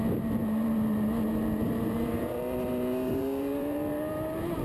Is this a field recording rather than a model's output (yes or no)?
no